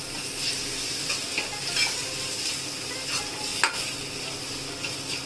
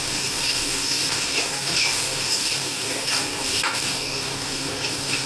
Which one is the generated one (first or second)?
second